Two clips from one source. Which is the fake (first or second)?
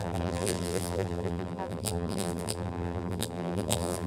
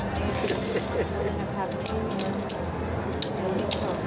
first